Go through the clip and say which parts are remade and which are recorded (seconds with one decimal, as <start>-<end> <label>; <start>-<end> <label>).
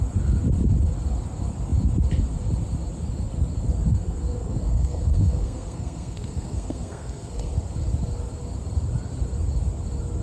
0.0-3.9 recorded; 3.9-7.5 remade; 7.5-10.2 recorded